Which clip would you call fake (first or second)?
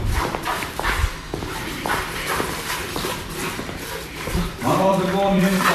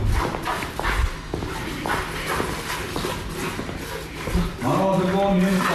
first